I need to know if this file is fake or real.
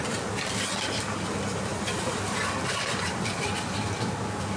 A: fake